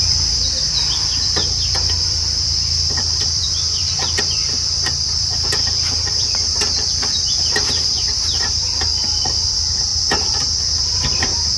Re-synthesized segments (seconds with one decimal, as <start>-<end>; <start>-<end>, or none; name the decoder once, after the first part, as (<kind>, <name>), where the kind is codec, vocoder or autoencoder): 0.0-11.6 (vocoder, BigVGAN v2)